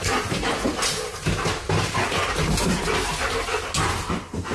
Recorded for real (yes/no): no